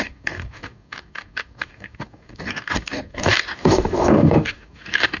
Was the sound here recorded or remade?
remade